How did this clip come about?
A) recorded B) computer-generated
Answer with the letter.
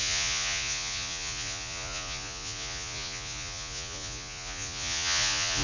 B